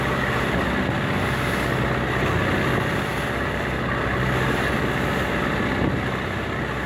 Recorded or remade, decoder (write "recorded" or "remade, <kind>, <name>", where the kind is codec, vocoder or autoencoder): recorded